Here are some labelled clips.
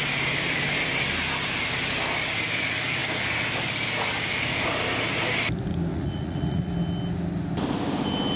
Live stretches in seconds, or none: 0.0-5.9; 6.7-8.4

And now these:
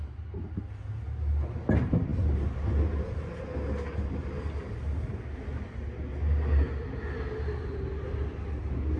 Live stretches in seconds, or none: 0.0-9.0

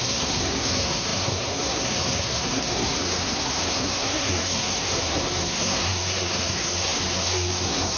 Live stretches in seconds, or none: none

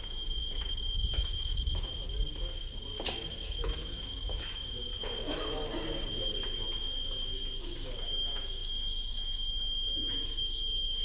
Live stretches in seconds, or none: 1.9-3.3; 4.9-7.6

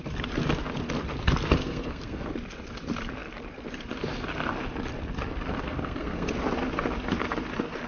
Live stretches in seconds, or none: 0.0-1.6; 2.3-5.5; 6.3-7.9

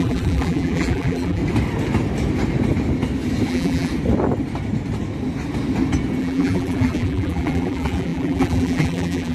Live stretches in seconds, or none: 1.4-3.5; 3.9-6.2